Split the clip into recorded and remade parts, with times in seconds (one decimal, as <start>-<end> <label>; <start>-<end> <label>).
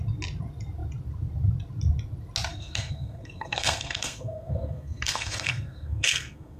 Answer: 0.0-2.5 recorded; 2.5-6.6 remade